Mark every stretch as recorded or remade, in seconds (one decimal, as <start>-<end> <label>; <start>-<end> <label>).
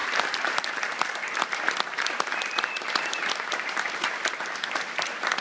0.0-5.4 recorded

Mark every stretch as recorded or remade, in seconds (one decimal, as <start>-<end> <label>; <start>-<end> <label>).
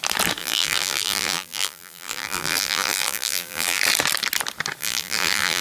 0.0-0.4 recorded; 0.4-3.8 remade; 3.8-4.8 recorded; 4.8-5.6 remade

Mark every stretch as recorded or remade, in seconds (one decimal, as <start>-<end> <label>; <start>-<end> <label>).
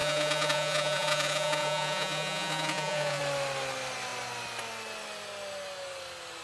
0.0-3.2 remade; 3.2-6.4 recorded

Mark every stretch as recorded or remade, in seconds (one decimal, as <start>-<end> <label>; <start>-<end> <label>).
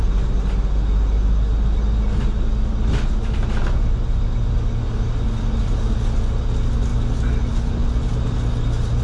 0.0-9.0 recorded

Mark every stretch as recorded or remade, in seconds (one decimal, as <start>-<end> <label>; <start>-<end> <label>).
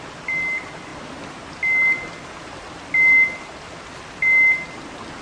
0.0-5.2 recorded